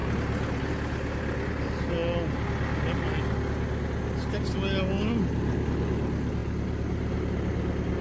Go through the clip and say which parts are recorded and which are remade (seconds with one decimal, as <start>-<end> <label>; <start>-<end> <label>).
0.0-0.7 remade; 0.7-6.4 recorded; 6.4-7.5 remade; 7.5-8.0 recorded